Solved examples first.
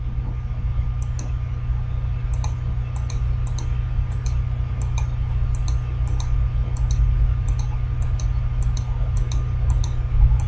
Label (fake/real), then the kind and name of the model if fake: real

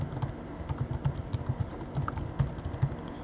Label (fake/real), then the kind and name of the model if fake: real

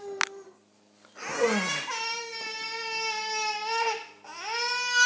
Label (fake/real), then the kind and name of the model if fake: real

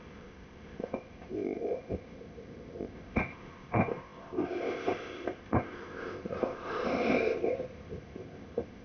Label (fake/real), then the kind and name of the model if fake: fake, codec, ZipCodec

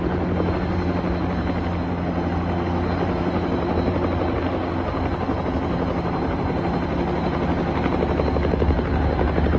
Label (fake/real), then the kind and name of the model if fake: real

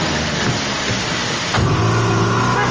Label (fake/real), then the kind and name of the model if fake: real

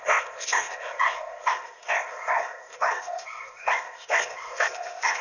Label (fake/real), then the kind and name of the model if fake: fake, codec, ZipCodec